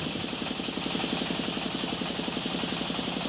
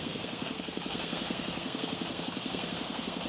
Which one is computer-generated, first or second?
second